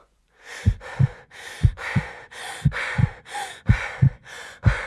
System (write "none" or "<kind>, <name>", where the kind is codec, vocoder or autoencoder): vocoder, Vocos